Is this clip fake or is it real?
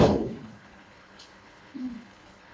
fake